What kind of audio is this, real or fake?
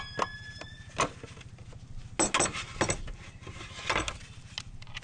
real